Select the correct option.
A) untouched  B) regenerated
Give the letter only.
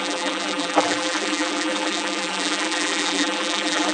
B